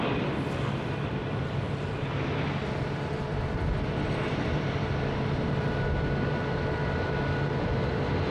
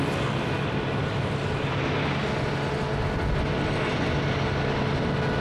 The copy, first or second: first